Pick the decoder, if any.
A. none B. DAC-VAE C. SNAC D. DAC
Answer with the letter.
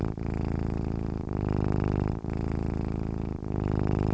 A